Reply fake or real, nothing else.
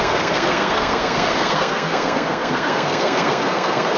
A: fake